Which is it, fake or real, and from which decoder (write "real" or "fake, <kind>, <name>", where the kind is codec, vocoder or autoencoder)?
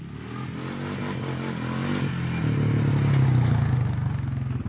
real